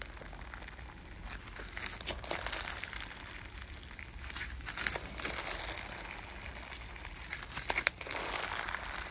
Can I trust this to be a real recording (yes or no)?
yes